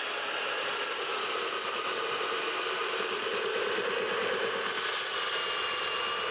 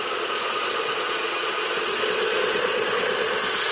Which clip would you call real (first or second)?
first